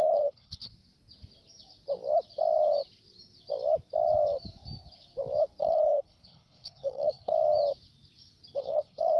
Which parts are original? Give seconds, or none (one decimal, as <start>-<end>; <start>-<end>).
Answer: 0.7-5.6; 7.3-8.6